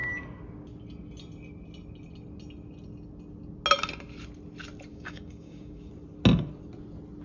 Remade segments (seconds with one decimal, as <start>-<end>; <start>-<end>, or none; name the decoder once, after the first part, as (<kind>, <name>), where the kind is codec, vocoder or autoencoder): 4.9-5.9 (codec, DAC)